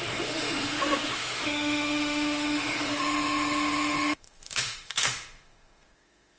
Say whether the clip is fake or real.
fake